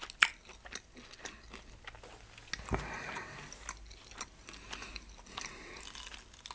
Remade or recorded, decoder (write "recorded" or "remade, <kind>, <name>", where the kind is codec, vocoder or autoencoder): recorded